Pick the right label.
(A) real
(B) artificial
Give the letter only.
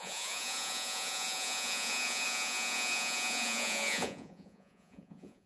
B